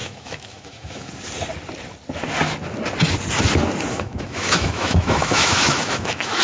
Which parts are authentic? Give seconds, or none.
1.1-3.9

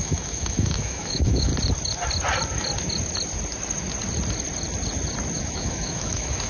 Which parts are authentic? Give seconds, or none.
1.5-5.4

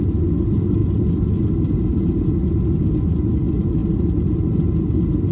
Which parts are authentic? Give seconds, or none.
0.0-5.3

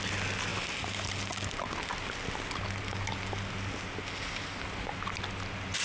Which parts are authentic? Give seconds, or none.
0.0-5.8